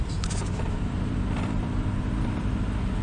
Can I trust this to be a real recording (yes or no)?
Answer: no